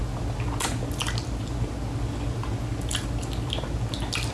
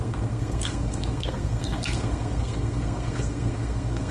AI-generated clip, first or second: second